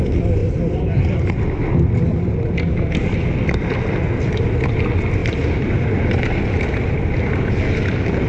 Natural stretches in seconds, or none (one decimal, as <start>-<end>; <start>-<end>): 0.0-8.3